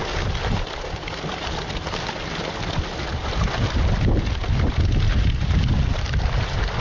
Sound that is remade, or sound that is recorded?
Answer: recorded